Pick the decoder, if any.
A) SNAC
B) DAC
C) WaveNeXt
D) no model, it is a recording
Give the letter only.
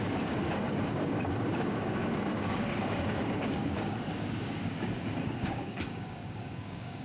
B